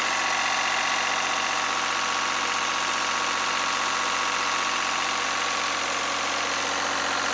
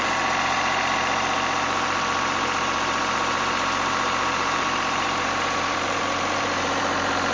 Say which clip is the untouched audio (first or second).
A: first